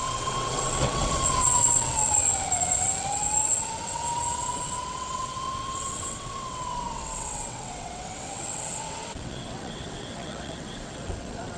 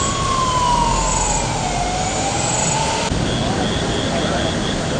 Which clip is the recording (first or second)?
second